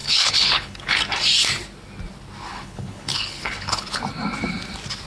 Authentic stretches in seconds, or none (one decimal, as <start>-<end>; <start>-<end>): 1.0-2.5; 4.0-5.1